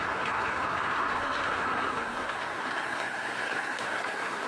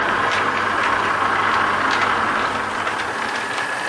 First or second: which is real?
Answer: second